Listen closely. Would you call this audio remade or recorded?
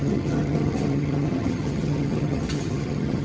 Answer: remade